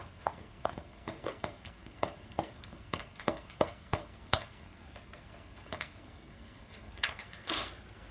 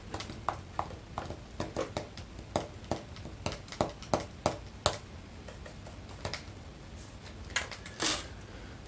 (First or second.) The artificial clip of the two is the first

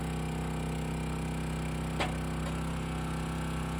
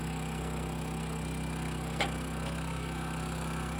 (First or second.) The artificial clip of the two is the second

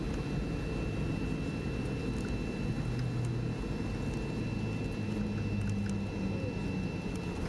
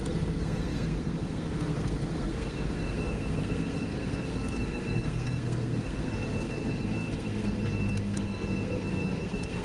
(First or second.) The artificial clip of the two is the second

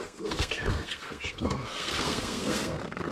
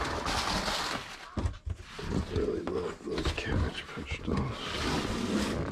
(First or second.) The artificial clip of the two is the first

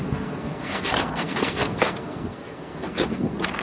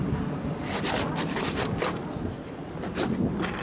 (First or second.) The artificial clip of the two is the first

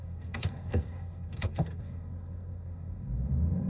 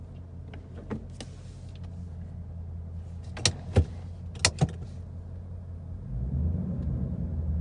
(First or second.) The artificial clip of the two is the first